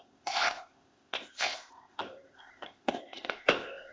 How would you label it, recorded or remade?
remade